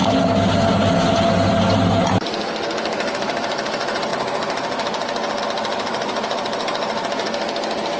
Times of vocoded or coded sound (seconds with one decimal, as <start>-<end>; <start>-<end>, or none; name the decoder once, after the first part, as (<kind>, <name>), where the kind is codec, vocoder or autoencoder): none